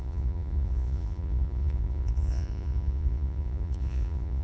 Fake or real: fake